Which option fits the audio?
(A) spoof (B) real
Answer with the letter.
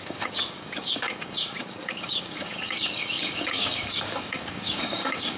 A